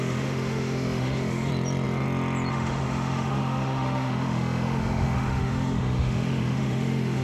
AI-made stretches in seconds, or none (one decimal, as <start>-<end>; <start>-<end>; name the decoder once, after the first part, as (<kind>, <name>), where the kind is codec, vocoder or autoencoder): 0.0-1.5 (autoencoder, DAC-VAE); 2.5-7.2